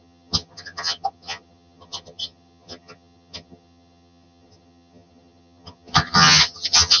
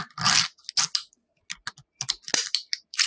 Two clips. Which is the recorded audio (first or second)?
second